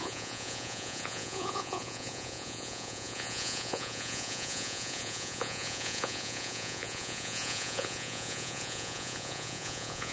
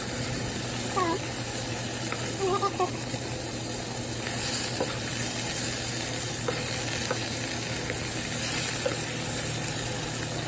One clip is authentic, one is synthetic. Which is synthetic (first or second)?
first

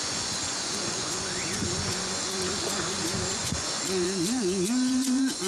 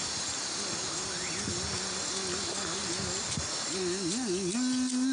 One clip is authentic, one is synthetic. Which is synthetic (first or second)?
first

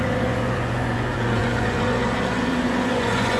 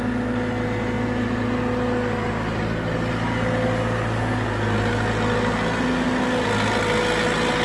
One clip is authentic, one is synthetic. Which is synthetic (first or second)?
first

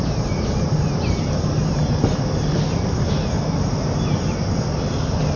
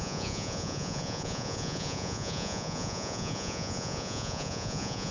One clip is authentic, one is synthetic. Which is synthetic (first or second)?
second